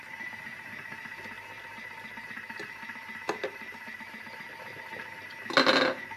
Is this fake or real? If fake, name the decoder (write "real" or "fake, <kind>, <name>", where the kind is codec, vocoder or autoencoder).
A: real